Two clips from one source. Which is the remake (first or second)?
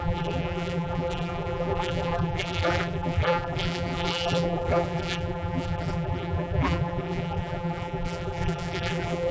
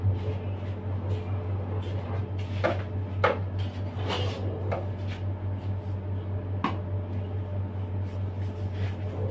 first